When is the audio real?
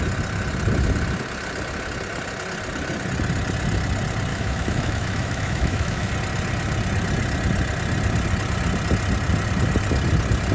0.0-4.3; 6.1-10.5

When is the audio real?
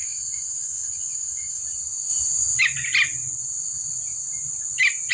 1.6-5.1